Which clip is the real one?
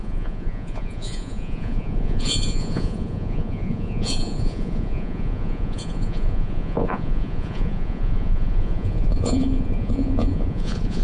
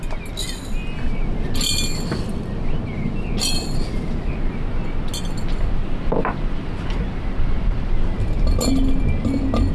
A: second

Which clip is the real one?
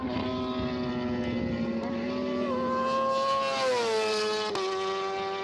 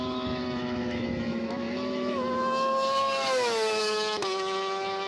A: first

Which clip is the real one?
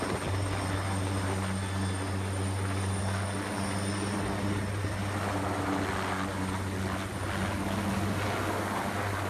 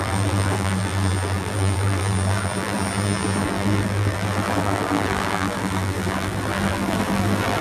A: first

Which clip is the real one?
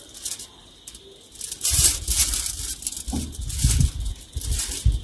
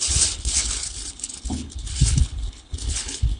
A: first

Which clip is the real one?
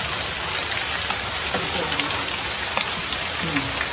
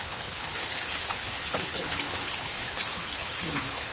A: first